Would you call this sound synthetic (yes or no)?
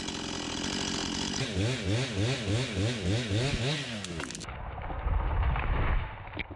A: no